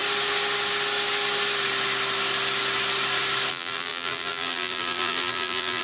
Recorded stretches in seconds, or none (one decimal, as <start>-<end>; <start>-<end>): 0.0-3.5